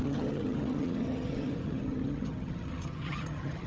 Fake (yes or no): yes